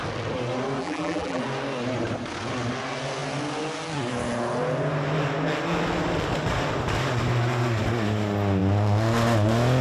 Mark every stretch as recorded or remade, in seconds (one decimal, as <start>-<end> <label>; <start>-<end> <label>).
0.0-0.8 recorded; 0.8-1.4 remade; 1.4-9.8 recorded